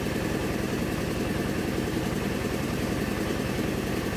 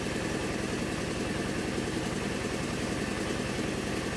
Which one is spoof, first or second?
first